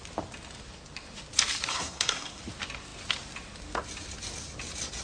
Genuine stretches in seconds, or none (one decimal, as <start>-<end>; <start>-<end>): 0.0-1.7; 2.4-5.0